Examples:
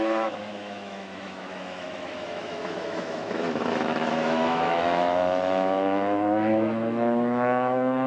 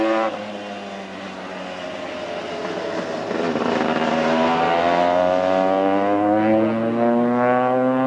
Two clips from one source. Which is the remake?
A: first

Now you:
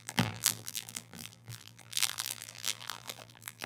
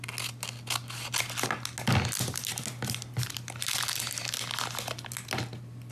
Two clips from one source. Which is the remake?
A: first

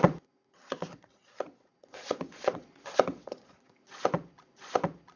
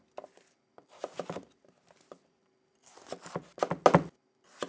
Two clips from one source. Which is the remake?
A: first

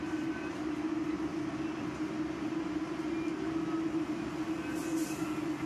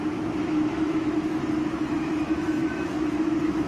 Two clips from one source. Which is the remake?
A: second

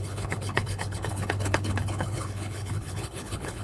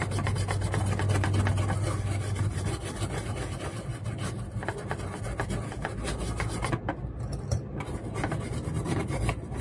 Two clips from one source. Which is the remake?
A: first